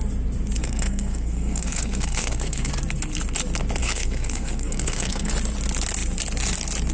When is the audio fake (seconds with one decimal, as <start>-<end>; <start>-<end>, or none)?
0.6-2.7; 3.8-5.3